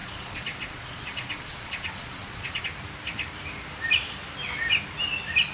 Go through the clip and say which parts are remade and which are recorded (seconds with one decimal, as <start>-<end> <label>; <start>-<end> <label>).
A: 0.0-2.6 remade; 2.6-5.5 recorded